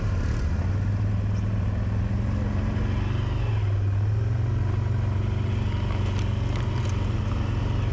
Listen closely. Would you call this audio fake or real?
real